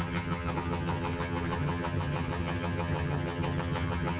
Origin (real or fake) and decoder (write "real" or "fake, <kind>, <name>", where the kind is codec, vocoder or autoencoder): fake, vocoder, HiFi-GAN